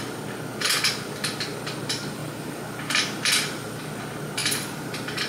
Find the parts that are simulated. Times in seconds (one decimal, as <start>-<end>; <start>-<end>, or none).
2.2-4.0; 4.4-5.3